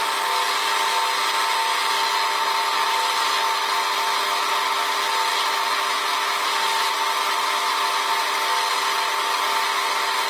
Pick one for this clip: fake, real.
real